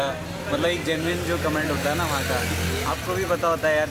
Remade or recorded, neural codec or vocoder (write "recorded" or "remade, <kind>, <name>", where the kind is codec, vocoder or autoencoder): recorded